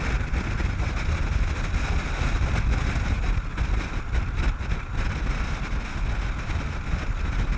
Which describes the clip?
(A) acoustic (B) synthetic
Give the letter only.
A